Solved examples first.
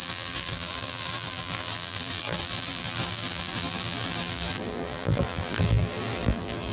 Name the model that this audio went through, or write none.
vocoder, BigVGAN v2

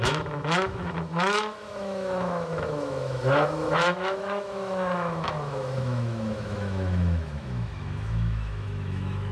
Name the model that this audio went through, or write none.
autoencoder, DAC-VAE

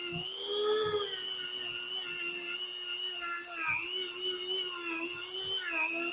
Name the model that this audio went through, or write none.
none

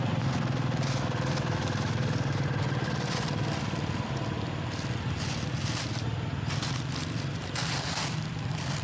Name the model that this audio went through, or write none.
vocoder, BigVGAN v2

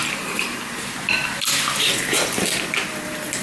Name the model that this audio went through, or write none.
vocoder, BigVGAN v2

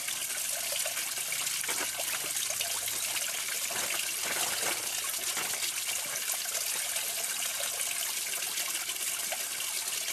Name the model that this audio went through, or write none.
none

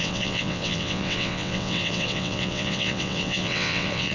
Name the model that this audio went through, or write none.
vocoder, WaveNeXt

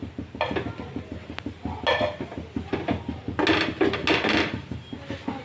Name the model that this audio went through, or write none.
none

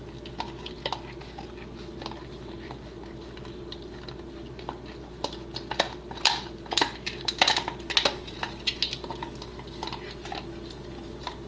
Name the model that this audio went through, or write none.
none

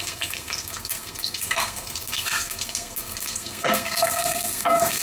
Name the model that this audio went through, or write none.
codec, SNAC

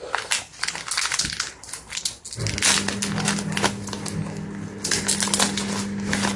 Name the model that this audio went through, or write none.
none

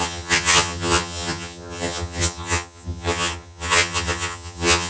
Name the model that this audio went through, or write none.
vocoder, HiFi-GAN